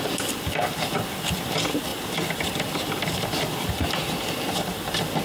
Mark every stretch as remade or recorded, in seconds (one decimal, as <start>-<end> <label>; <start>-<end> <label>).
0.0-5.2 recorded